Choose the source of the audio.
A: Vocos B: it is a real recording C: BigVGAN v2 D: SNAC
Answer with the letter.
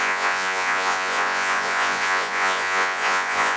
A